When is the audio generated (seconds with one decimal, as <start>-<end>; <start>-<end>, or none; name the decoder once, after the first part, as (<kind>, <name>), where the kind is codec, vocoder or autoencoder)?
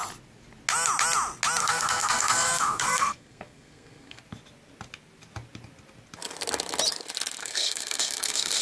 1.6-4.2 (codec, SNAC); 7.4-8.6